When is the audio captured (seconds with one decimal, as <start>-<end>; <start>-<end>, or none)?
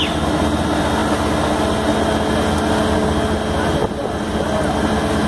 0.0-5.3